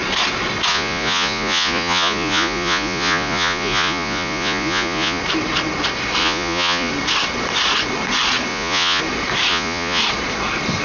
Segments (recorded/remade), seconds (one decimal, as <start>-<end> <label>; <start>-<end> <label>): 0.0-0.7 recorded; 0.7-5.2 remade; 5.2-6.2 recorded; 6.2-6.9 remade; 6.9-8.5 recorded; 8.5-9.0 remade; 9.0-9.5 recorded; 9.5-10.0 remade; 10.0-10.8 recorded